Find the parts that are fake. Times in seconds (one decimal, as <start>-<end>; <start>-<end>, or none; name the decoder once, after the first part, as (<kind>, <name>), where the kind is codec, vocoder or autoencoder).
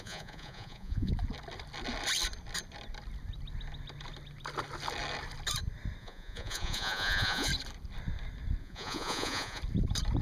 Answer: 0.0-1.1 (vocoder, Vocos); 6.0-7.5; 8.6-9.6